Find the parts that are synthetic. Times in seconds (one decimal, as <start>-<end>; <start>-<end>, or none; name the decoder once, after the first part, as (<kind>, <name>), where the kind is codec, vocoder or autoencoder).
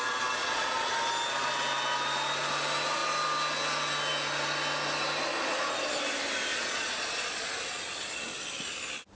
0.4-0.9 (vocoder, Vocos); 6.5-7.5